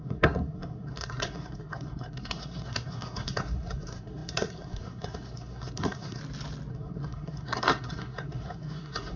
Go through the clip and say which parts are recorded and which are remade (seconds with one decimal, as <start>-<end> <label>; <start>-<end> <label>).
0.0-6.2 remade; 6.2-6.7 recorded; 6.7-9.2 remade

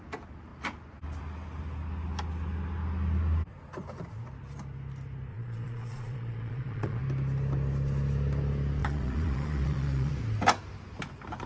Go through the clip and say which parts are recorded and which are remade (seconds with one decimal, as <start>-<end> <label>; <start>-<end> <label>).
0.0-5.3 recorded; 5.3-7.0 remade; 7.0-8.8 recorded; 8.8-10.1 remade; 10.1-11.5 recorded

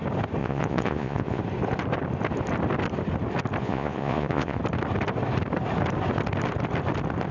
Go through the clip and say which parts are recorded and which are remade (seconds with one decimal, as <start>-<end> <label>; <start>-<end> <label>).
0.0-0.4 recorded; 0.4-1.4 remade; 1.4-3.6 recorded; 3.6-4.6 remade; 4.6-7.3 recorded

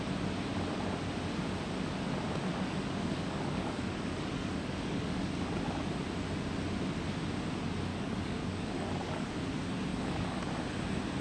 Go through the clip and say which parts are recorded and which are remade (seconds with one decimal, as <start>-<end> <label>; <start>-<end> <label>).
0.0-2.5 recorded; 2.5-5.8 remade; 5.8-7.9 recorded; 7.9-9.3 remade; 9.3-9.9 recorded; 9.9-10.5 remade; 10.5-11.2 recorded